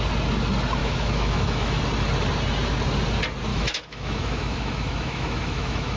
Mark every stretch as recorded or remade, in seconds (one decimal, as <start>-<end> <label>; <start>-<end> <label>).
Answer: 0.0-0.8 recorded; 0.8-1.8 remade; 1.8-3.5 recorded; 3.5-6.0 remade